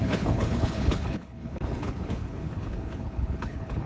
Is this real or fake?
fake